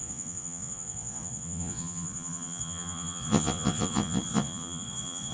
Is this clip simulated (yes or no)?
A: yes